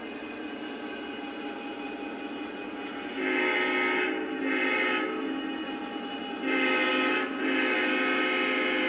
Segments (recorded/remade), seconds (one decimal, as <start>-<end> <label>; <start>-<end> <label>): 0.0-8.9 recorded